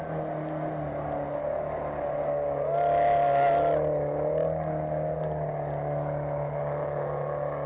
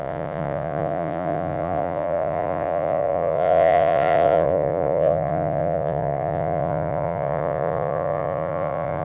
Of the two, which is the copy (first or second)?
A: second